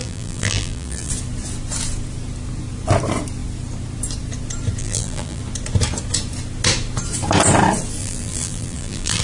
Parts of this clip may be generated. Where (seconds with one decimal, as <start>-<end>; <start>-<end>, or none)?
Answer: 0.0-1.1; 4.8-5.4; 8.0-9.2